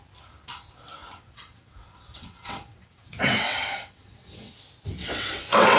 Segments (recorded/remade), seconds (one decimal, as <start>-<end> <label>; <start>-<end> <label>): 0.0-1.0 recorded; 1.0-4.5 remade; 4.5-5.0 recorded; 5.0-5.8 remade